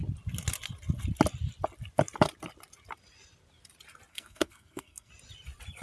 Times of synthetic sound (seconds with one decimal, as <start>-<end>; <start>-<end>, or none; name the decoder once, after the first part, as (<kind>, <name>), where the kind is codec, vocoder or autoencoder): 4.1-5.1 (codec, SNAC)